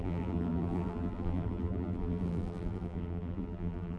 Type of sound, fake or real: fake